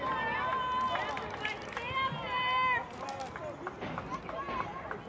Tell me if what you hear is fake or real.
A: real